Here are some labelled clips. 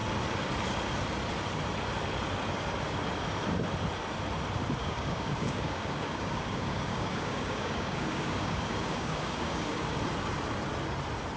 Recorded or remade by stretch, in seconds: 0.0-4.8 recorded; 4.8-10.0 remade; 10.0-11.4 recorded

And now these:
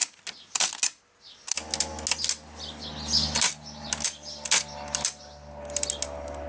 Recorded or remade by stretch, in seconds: 0.0-6.5 recorded

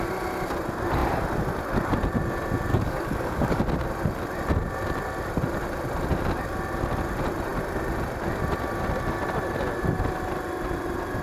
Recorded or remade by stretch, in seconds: 0.0-2.7 recorded; 2.7-3.6 remade; 3.6-11.2 recorded

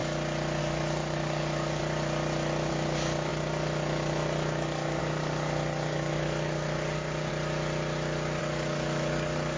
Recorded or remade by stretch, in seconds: 0.0-0.6 recorded; 0.6-1.8 remade; 1.8-2.7 recorded; 2.7-7.3 remade; 7.3-8.4 recorded; 8.4-9.6 remade

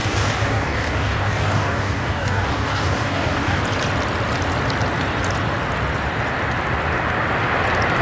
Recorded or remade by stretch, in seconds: 0.0-3.6 remade; 3.6-8.0 recorded

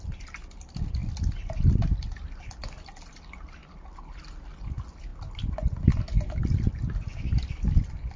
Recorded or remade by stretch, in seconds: 0.0-8.2 recorded

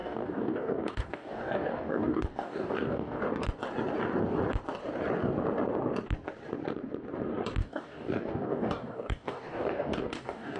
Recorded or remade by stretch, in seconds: 0.0-3.2 remade; 3.2-7.6 recorded; 7.6-10.6 remade